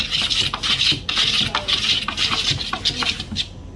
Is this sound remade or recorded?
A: recorded